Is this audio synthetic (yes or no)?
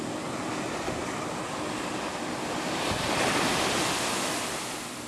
no